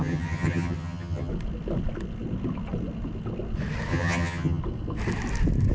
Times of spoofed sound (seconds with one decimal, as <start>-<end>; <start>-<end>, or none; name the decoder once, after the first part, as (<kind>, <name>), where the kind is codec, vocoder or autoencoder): 0.0-1.3 (vocoder, HiFi-GAN); 3.9-4.6